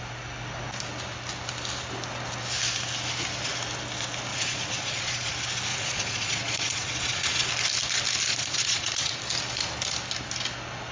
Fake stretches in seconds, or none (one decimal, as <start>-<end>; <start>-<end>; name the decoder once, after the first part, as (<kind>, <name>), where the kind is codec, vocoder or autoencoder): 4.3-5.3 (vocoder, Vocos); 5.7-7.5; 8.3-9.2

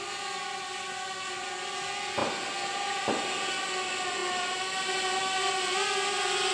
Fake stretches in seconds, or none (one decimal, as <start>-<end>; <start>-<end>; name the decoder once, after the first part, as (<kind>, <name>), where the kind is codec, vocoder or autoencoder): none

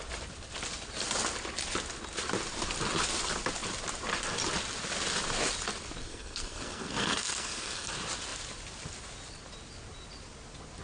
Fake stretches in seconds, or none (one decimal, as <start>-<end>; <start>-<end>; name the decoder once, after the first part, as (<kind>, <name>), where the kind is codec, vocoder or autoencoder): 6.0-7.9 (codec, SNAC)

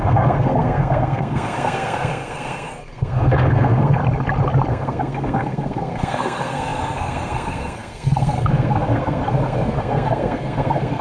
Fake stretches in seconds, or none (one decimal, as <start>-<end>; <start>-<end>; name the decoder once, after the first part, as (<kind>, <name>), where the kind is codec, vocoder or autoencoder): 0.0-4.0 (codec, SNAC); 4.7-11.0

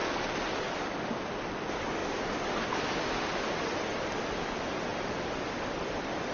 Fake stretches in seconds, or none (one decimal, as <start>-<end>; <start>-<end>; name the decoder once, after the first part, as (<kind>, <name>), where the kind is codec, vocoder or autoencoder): 0.0-0.7 (vocoder, BigVGAN v2)